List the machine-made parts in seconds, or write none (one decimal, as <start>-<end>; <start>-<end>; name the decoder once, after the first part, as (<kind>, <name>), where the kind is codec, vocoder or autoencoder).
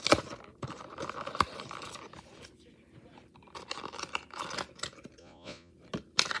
5.2-5.7 (vocoder, Vocos)